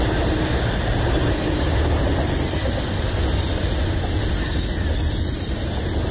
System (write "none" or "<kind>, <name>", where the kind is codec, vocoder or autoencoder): none